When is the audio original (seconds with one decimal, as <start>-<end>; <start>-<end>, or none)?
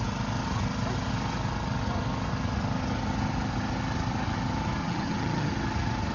0.0-4.8; 5.5-6.1